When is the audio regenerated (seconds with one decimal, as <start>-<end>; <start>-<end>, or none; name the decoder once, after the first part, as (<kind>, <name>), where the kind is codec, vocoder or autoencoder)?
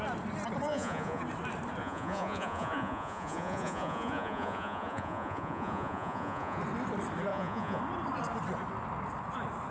0.7-1.2 (vocoder, Vocos); 1.8-6.6; 7.3-7.8